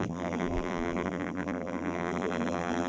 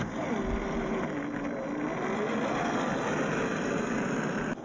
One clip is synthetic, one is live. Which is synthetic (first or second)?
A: first